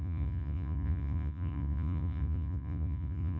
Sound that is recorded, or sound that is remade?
remade